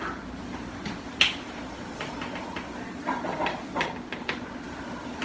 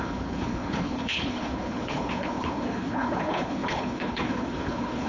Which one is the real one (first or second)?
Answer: first